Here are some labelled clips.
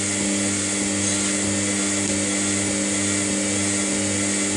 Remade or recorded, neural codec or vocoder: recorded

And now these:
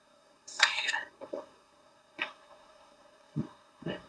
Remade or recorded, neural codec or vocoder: remade, codec, SNAC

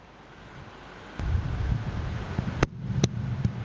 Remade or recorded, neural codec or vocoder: recorded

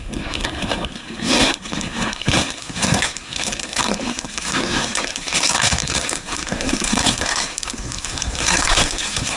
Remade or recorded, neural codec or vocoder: remade, codec, SNAC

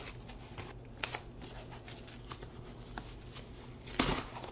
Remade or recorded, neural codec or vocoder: recorded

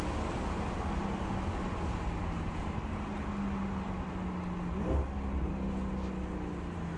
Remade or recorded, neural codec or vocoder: recorded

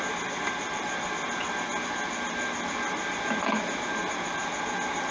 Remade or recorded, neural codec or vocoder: recorded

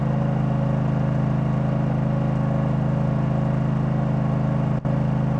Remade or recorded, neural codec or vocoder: recorded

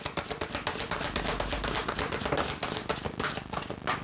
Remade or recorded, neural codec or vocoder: recorded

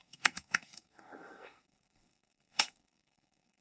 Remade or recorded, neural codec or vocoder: remade, codec, SNAC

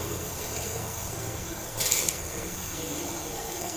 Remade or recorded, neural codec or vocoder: remade, codec, SNAC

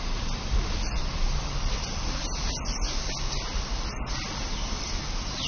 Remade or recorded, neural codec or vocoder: recorded